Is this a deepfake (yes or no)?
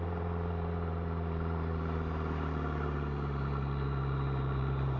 yes